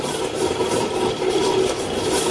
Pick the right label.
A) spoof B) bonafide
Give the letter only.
B